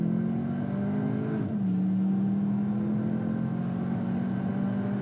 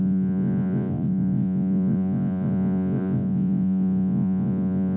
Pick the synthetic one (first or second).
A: second